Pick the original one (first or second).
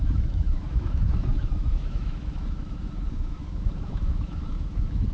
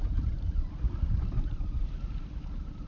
second